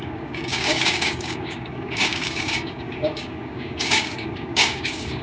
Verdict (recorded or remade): remade